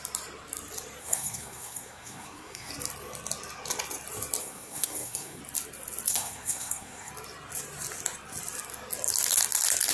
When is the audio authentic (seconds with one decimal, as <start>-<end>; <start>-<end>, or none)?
0.0-1.0; 2.7-4.4; 5.4-6.1; 7.1-9.9